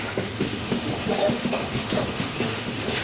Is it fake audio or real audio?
fake